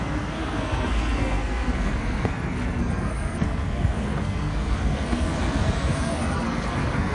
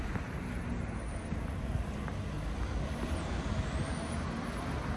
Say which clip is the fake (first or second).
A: first